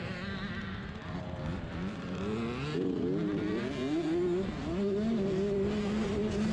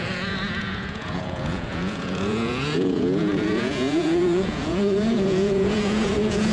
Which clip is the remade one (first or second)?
second